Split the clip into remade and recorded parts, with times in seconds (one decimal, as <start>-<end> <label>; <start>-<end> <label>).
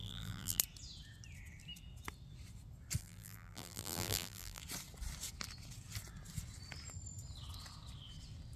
0.0-0.6 remade; 0.6-3.0 recorded; 3.0-4.6 remade; 4.6-8.6 recorded